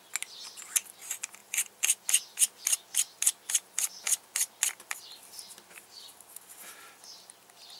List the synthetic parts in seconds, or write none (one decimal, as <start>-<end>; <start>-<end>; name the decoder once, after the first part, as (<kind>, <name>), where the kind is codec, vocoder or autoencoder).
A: 1.4-2.0 (vocoder, BigVGAN v2)